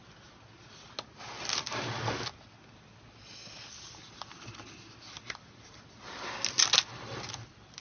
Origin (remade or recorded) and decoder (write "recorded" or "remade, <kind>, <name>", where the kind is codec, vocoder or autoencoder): recorded